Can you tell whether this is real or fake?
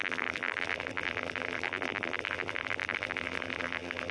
fake